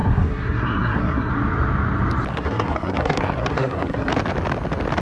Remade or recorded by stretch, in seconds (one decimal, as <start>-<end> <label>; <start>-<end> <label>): 0.0-1.3 remade; 1.3-2.3 recorded; 2.3-4.1 remade; 4.1-5.0 recorded